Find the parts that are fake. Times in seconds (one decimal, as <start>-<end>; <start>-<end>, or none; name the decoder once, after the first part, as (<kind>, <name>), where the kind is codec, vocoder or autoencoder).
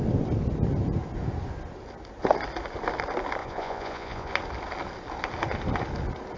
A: 3.4-4.3 (vocoder, Vocos)